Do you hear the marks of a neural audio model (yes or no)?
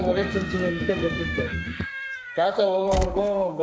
yes